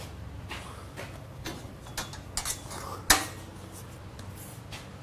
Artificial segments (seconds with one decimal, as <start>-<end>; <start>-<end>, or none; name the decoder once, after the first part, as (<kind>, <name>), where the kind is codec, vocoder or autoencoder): none